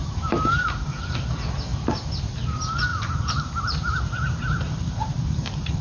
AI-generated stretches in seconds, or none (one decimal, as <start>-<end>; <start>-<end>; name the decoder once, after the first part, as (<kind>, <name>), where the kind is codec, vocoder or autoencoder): 0.0-1.1 (vocoder, BigVGAN v2); 2.9-5.8